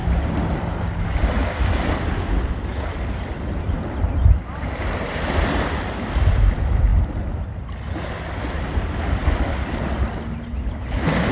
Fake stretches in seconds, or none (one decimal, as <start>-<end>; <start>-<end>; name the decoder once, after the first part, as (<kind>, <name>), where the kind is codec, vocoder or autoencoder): none